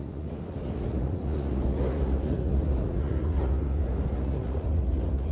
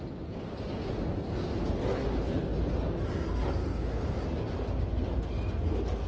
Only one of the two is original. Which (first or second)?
second